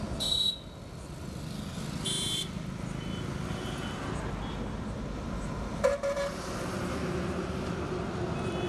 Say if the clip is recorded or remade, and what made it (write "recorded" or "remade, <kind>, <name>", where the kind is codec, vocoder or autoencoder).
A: recorded